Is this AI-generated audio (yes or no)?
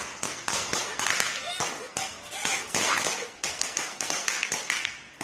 yes